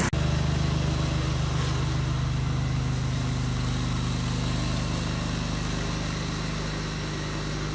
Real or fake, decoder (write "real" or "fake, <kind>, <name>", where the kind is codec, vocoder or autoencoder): real